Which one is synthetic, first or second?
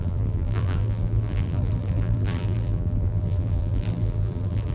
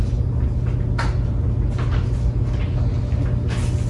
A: first